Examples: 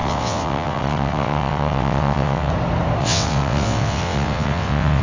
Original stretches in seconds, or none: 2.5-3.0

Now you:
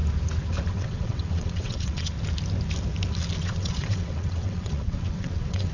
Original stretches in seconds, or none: 0.0-0.7; 2.1-3.4

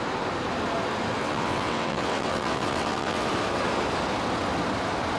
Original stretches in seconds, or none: 0.0-1.2; 3.3-5.2

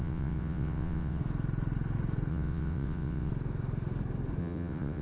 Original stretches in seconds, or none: 1.2-2.3; 3.3-4.4

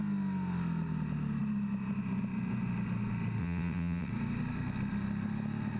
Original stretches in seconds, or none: 0.0-3.4; 4.1-5.8

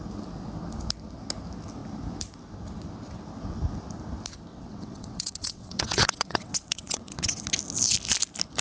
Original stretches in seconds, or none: 0.0-4.5; 7.4-8.6

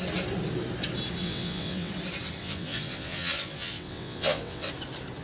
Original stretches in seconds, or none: 0.0-1.2; 1.9-2.4; 4.7-5.2

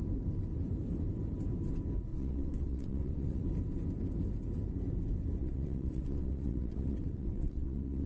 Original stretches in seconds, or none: 0.0-2.1; 3.4-5.4